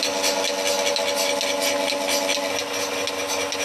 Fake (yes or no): no